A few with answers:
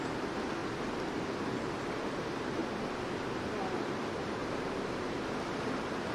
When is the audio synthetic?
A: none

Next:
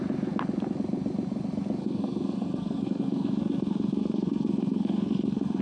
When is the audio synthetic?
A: 1.8-5.6 (codec, SNAC)

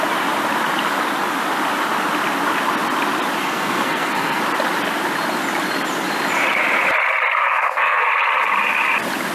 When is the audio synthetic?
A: 3.4-4.4 (codec, SNAC); 7.4-8.0

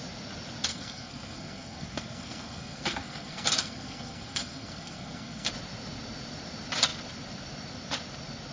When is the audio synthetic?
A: 0.7-5.5 (codec, SNAC)